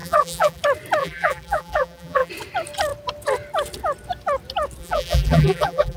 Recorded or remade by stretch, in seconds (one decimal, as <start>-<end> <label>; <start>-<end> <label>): 0.0-0.6 remade; 0.6-1.0 recorded; 1.0-2.3 remade; 2.3-4.8 recorded; 4.8-6.0 remade